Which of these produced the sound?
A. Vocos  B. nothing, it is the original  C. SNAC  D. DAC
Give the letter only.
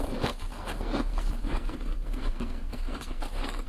C